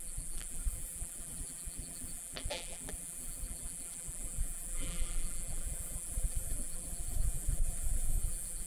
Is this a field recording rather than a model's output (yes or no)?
no